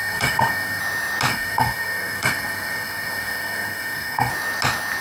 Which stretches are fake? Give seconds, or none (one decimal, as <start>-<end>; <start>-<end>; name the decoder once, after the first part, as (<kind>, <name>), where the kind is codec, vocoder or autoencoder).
0.0-0.8 (codec, SNAC); 1.3-4.3